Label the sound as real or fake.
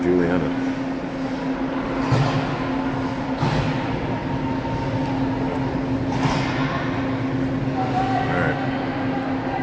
real